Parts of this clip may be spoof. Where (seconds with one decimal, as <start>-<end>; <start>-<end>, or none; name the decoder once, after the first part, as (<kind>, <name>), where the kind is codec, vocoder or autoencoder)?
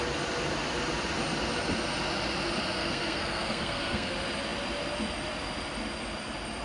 2.8-4.1 (codec, SNAC)